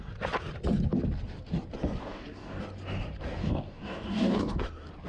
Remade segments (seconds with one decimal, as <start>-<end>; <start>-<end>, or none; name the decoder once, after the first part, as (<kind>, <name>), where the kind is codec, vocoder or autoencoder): 2.0-2.6 (codec, DAC); 3.4-4.6

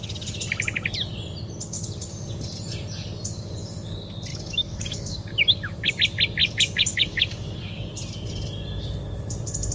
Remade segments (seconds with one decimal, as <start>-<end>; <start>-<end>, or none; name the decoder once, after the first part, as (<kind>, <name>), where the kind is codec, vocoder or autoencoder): 4.3-5.9 (codec, DAC); 6.4-7.9

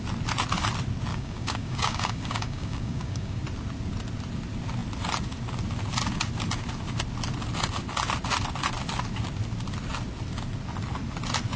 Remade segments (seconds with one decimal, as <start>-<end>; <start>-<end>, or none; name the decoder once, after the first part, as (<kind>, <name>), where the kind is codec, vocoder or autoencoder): 1.1-3.4 (codec, DAC)

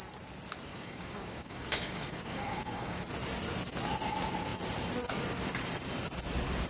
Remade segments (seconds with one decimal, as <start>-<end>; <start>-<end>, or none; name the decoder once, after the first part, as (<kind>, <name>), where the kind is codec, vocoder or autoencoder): 0.7-3.0 (codec, DAC)

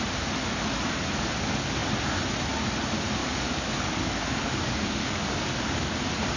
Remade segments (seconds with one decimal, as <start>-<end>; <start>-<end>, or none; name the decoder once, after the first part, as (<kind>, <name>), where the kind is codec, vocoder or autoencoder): 3.2-6.0 (codec, DAC)

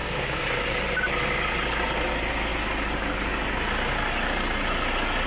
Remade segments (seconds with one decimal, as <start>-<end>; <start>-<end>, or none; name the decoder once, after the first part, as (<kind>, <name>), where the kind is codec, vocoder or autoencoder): 0.0-0.6 (codec, DAC)